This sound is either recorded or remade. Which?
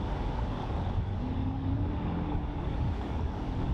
remade